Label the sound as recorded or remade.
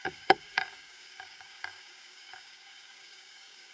remade